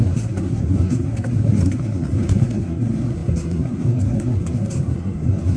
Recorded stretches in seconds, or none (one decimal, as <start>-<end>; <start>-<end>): none